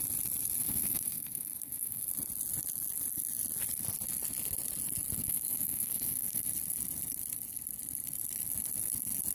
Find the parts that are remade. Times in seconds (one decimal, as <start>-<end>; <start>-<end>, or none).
0.6-2.1; 5.2-6.5